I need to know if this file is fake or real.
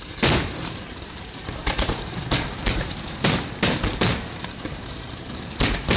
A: fake